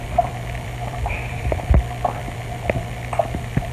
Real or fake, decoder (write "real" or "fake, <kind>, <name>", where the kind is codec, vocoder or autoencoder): fake, vocoder, BigVGAN v2